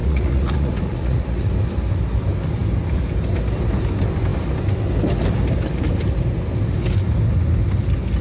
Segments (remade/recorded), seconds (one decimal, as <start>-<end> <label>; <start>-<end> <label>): 0.0-1.5 remade; 1.5-8.2 recorded